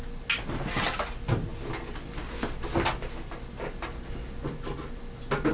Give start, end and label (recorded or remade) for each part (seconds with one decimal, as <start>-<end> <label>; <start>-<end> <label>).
0.0-5.5 recorded